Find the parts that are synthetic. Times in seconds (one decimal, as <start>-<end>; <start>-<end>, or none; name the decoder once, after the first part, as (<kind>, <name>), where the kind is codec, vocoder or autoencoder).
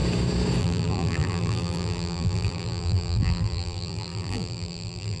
0.6-5.2 (vocoder, BigVGAN v2)